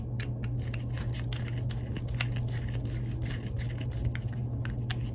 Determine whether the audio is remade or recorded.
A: recorded